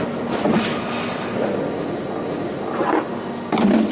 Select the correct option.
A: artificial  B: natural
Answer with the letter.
B